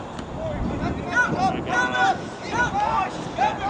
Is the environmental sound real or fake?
real